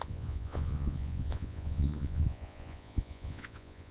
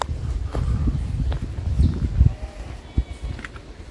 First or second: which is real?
second